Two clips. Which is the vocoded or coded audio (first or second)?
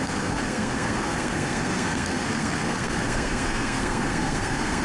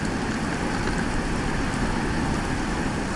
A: first